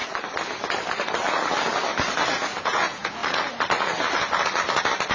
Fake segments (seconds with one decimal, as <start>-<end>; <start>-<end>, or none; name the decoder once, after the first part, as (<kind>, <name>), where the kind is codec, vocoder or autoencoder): 2.6-3.2 (vocoder, Vocos)